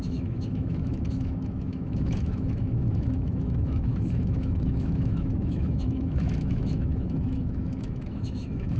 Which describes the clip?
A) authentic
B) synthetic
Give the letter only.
B